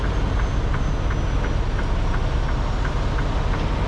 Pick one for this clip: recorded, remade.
recorded